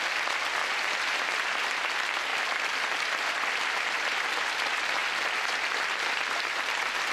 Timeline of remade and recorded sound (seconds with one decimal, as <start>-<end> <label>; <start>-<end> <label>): 0.0-0.6 remade; 0.6-1.1 recorded; 1.1-2.3 remade; 2.3-3.2 recorded; 3.2-5.0 remade; 5.0-5.9 recorded; 5.9-7.1 remade